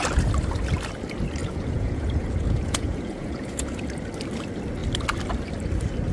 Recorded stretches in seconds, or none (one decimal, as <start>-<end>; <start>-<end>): 0.0-1.4; 3.8-6.1